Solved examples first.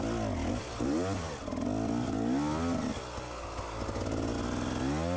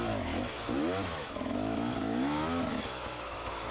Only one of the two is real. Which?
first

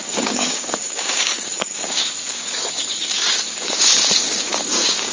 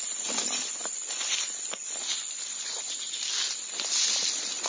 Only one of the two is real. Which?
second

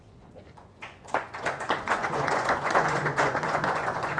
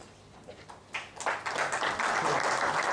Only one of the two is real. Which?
second